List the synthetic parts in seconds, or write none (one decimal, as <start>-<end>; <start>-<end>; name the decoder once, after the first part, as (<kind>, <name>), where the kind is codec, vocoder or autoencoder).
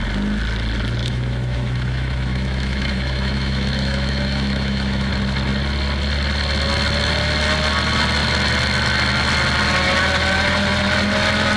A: 1.0-5.1 (autoencoder, DAC-VAE)